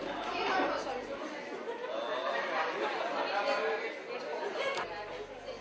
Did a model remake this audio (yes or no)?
no